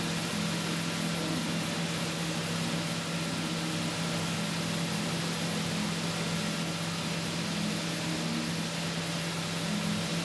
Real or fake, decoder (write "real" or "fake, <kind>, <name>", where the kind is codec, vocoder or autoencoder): real